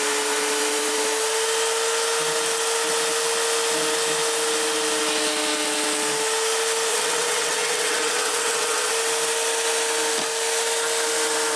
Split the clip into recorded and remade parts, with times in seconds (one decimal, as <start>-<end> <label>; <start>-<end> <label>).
0.0-6.9 recorded; 6.9-8.9 remade; 8.9-11.6 recorded